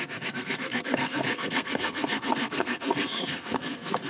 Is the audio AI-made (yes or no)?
yes